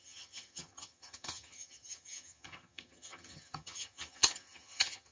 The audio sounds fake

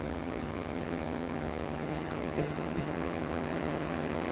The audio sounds fake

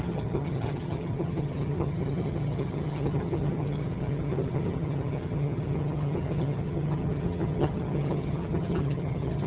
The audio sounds fake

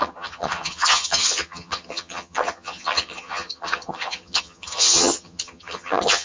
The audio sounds fake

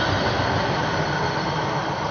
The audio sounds real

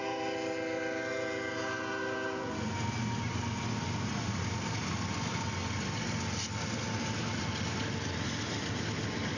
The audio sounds real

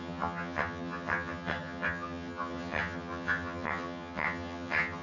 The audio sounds fake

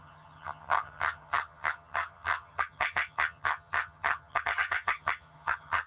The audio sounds fake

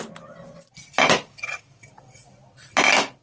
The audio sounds real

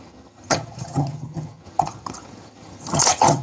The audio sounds fake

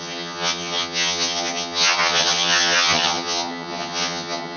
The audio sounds fake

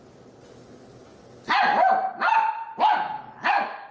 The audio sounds real